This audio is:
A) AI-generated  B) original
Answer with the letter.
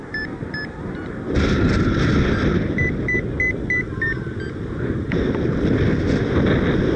B